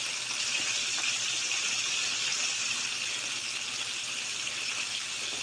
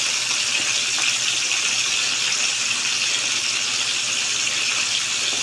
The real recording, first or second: second